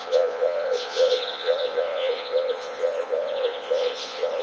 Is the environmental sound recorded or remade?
remade